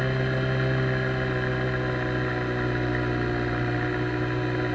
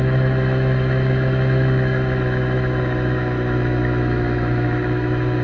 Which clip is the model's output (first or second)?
second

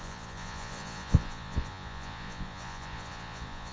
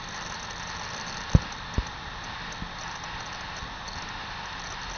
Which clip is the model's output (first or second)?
first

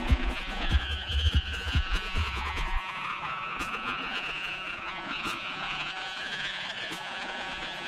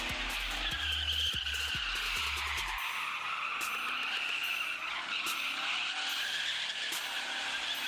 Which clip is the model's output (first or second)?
first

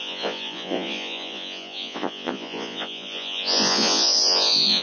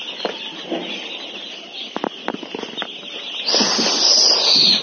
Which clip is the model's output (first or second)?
first